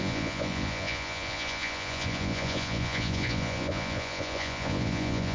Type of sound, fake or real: fake